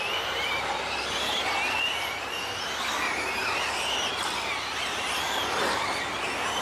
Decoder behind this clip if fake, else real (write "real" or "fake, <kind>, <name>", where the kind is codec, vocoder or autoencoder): real